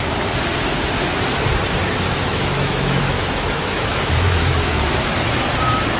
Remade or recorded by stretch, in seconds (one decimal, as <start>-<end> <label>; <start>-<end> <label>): 0.0-2.3 recorded; 2.3-5.2 remade; 5.2-6.0 recorded

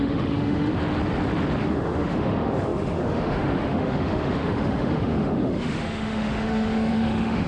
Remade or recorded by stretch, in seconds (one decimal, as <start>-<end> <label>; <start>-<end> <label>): 0.0-0.7 remade; 0.7-1.6 recorded; 1.6-7.5 remade